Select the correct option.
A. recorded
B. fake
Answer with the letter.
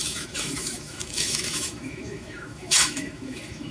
B